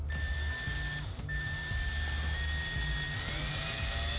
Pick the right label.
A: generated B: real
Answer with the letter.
B